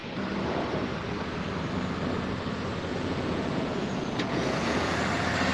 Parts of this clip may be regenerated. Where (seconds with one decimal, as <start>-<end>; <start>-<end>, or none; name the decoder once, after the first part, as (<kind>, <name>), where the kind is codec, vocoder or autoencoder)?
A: 2.9-4.9 (vocoder, Vocos)